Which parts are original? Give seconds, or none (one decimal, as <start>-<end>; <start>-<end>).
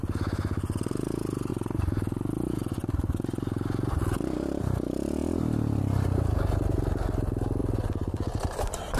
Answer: 0.0-7.6